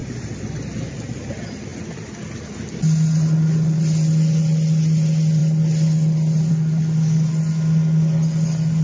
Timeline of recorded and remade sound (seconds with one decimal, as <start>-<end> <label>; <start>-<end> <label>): 0.0-8.8 recorded